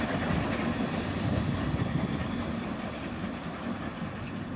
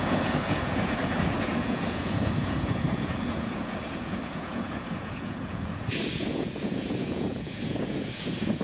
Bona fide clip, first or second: first